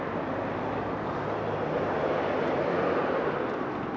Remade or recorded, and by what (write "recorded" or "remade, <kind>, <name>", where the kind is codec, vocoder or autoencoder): recorded